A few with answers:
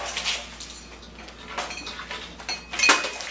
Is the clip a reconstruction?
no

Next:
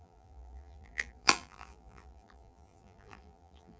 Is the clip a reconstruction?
yes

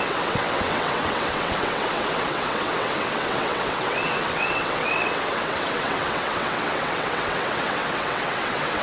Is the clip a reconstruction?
yes